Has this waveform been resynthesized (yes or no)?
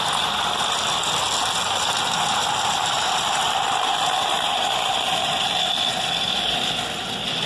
no